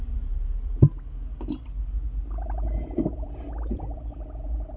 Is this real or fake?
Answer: real